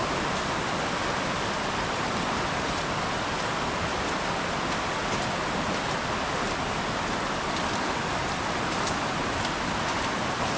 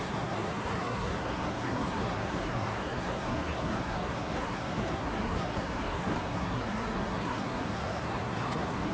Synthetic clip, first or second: second